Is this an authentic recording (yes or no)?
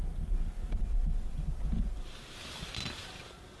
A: yes